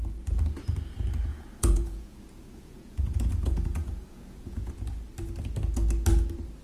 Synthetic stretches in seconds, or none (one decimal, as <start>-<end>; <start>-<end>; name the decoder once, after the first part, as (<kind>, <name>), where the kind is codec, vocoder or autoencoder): 1.3-4.7 (vocoder, Vocos)